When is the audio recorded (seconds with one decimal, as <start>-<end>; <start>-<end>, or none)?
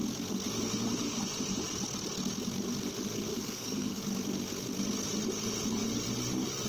0.0-3.3; 4.0-6.7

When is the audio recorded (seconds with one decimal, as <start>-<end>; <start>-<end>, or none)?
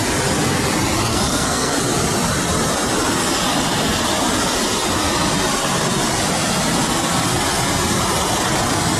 0.0-1.1; 1.8-9.0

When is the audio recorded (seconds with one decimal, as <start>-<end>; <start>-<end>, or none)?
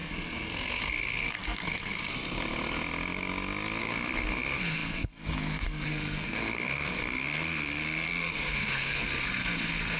2.1-3.8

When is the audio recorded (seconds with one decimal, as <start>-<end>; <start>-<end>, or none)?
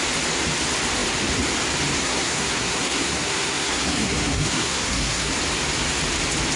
0.0-2.0; 5.3-6.6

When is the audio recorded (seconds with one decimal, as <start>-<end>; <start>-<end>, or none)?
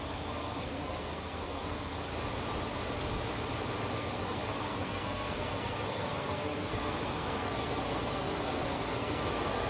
2.1-3.9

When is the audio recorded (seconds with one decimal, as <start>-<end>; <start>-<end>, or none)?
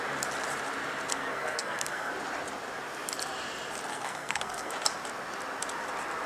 0.0-1.1; 2.1-3.9; 4.7-6.3